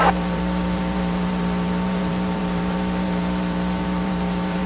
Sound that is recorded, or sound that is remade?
remade